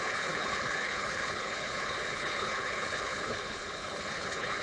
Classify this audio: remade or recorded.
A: remade